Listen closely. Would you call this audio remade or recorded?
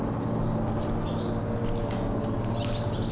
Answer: recorded